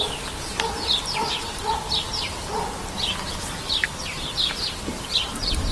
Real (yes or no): no